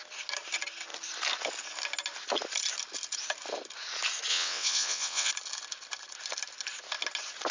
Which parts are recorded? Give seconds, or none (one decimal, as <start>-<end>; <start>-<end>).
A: 0.0-4.3; 5.3-7.5